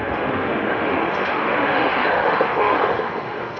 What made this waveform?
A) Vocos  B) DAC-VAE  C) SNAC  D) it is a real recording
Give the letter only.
B